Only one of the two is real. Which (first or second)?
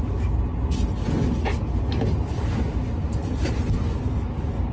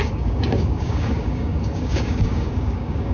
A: first